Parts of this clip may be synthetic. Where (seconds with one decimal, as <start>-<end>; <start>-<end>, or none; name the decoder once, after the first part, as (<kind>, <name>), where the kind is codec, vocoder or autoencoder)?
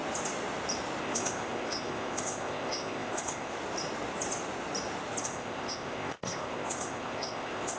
1.0-3.5 (codec, ZipCodec); 5.2-7.8